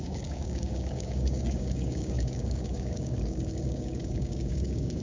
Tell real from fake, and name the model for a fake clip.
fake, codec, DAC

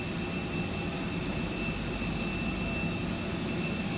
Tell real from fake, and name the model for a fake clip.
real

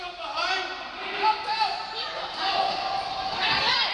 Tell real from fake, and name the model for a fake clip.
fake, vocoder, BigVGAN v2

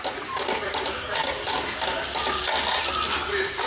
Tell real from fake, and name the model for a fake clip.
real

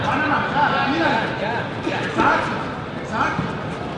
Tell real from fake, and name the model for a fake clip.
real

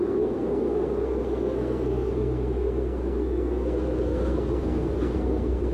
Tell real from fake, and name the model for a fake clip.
fake, codec, SNAC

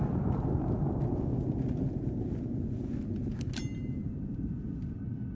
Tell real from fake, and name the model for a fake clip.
real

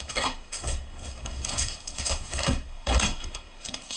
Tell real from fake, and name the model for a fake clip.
fake, codec, SNAC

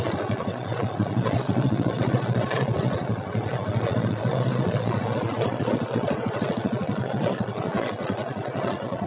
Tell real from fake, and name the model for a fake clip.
fake, vocoder, Vocos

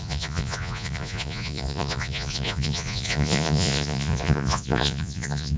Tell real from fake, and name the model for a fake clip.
fake, vocoder, Vocos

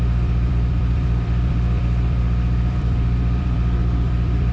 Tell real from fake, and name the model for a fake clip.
fake, vocoder, BigVGAN v2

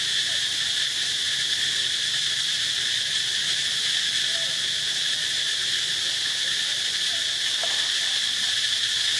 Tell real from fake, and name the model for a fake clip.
real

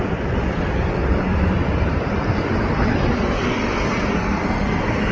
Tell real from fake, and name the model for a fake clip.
fake, vocoder, BigVGAN v2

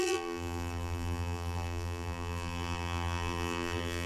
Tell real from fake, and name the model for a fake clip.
fake, vocoder, BigVGAN v2